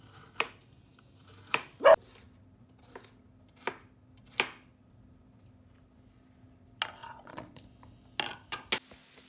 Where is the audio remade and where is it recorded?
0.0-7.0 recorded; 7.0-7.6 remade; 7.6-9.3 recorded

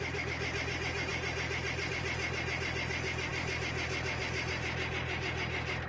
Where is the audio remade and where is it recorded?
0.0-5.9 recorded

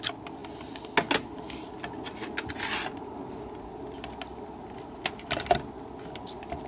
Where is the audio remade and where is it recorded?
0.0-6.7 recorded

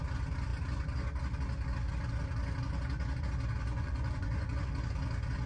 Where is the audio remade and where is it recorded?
0.0-3.7 recorded; 3.7-4.6 remade; 4.6-5.5 recorded

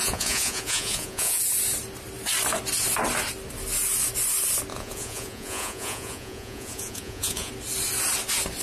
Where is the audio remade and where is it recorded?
0.0-1.4 remade; 1.4-4.7 recorded; 4.7-7.5 remade; 7.5-8.6 recorded